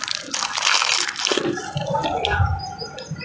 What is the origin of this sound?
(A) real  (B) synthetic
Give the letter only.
A